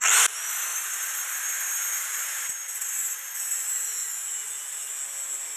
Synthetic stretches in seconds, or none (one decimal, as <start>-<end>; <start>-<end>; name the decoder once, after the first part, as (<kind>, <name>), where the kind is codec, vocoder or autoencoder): 0.7-3.3 (vocoder, BigVGAN v2)